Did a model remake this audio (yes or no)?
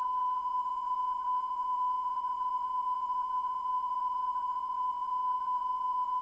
yes